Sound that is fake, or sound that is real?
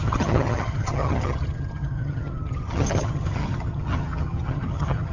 fake